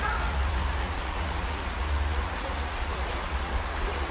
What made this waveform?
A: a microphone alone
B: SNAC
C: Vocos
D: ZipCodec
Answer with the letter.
C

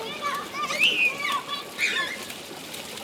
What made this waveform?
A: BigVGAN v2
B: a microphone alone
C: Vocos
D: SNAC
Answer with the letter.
A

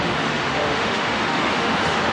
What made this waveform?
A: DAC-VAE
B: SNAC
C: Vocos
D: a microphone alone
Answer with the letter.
A